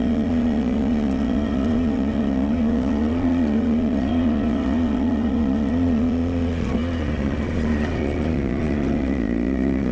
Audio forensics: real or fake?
fake